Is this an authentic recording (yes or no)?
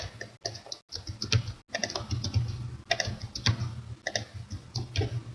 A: yes